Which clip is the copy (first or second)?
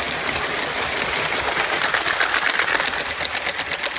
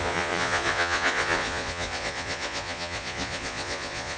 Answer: second